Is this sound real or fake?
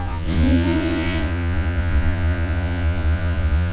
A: fake